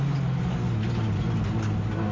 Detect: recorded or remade recorded